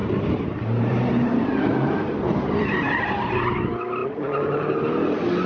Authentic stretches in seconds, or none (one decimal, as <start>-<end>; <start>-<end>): 3.3-5.5